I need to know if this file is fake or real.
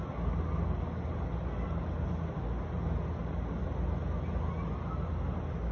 real